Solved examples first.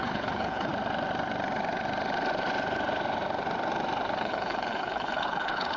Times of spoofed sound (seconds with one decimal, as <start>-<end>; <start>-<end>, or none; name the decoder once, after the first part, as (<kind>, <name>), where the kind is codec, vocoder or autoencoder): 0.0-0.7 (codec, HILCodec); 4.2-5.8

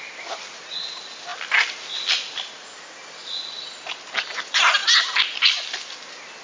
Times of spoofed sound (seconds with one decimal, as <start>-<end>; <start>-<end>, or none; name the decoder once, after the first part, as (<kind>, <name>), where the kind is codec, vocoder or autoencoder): none

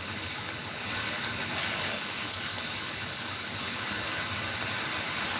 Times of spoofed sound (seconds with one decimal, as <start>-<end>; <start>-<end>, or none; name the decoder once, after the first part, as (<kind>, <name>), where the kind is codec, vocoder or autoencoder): 0.0-4.2 (codec, HILCodec)